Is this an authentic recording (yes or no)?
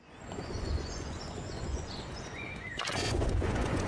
no